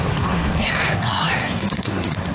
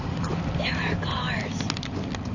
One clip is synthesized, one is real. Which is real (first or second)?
second